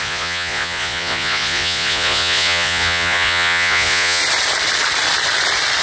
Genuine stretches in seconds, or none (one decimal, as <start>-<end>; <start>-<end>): 4.2-5.8